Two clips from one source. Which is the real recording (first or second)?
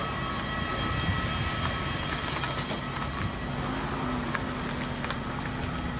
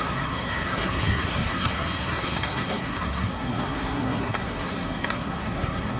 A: first